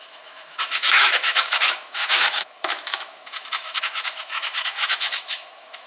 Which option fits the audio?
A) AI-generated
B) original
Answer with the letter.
A